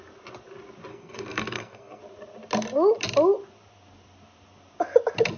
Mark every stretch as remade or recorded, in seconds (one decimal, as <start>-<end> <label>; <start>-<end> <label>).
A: 0.0-0.9 recorded; 0.9-2.0 remade; 2.0-5.4 recorded